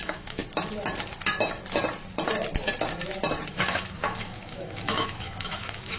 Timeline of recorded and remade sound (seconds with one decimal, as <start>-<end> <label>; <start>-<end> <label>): 0.0-0.4 remade; 0.4-3.5 recorded; 3.5-6.0 remade